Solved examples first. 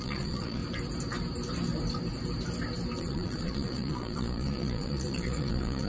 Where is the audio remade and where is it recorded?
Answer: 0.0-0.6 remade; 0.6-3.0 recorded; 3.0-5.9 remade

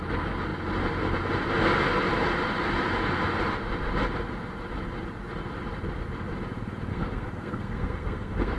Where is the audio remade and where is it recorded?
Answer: 0.0-6.9 recorded; 6.9-8.6 remade

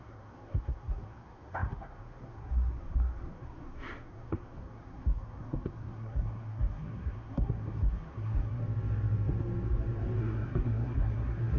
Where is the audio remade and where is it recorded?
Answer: 0.0-8.6 remade; 8.6-10.2 recorded; 10.2-11.6 remade